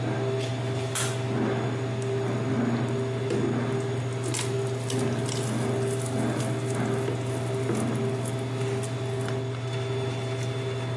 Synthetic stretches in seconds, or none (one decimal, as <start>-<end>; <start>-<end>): none